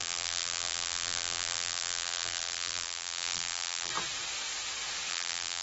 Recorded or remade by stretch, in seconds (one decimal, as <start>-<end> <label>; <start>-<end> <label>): 0.0-3.9 remade; 3.9-5.1 recorded; 5.1-5.6 remade